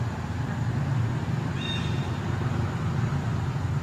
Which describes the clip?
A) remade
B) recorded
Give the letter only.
B